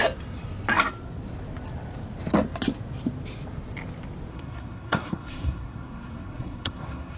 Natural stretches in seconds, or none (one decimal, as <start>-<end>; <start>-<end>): 0.0-4.3